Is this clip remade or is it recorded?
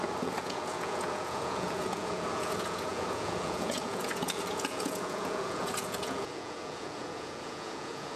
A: remade